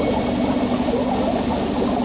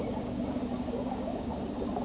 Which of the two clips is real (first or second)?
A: first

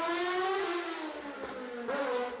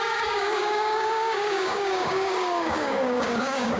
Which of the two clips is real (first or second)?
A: first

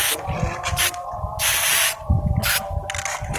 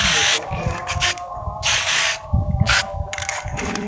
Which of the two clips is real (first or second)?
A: first